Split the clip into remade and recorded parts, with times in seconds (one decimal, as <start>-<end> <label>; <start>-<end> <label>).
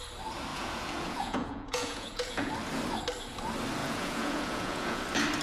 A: 0.0-0.5 recorded; 0.5-2.5 remade; 2.5-3.8 recorded; 3.8-5.0 remade; 5.0-5.4 recorded